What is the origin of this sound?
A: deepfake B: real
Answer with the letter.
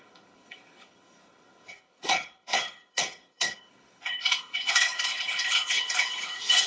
A